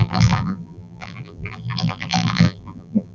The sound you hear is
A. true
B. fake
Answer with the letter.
B